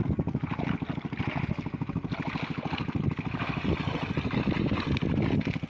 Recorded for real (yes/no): yes